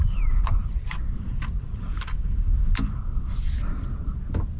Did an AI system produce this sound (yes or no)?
no